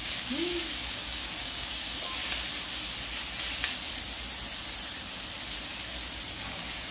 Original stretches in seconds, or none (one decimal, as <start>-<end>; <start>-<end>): 2.2-6.3